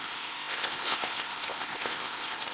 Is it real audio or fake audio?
fake